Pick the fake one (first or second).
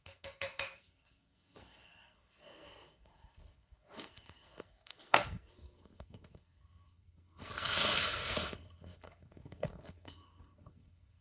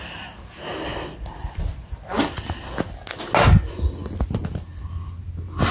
first